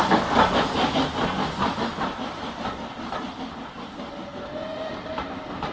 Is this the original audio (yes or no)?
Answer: yes